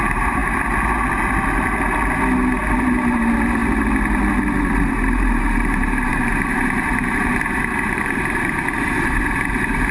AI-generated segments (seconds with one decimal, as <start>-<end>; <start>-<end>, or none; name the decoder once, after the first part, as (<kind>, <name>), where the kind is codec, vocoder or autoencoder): 0.0-0.4 (vocoder, BigVGAN v2); 2.8-3.6; 4.6-9.9